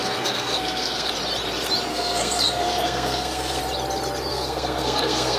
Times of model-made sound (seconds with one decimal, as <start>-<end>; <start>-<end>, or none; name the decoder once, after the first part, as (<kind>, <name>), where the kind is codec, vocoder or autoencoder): 0.0-1.1 (codec, SNAC); 1.9-3.6; 4.3-5.4